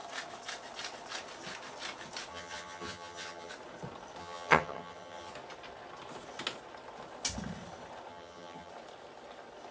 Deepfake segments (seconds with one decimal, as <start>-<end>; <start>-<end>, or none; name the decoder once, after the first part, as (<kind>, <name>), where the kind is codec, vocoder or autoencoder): 2.3-3.5 (vocoder, HiFi-GAN); 4.2-5.3; 8.1-8.7